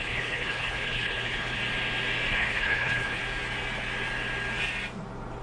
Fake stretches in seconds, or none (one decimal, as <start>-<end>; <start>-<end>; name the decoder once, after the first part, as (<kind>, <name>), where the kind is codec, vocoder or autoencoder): 0.0-1.6 (codec, HILCodec); 2.3-3.2